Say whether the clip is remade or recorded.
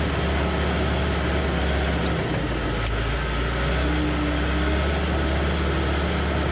recorded